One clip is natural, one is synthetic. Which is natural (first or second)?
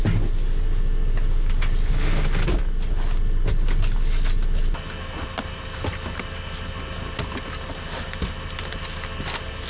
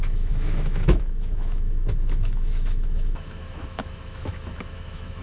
first